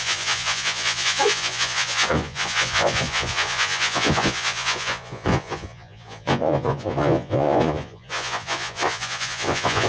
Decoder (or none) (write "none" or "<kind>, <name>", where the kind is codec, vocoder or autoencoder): vocoder, Vocos